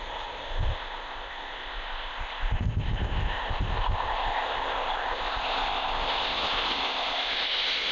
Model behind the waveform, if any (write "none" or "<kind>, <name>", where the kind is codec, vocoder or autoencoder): codec, ZipCodec